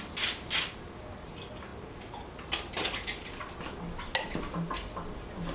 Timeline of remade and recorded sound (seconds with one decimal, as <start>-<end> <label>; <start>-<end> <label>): 0.0-5.5 recorded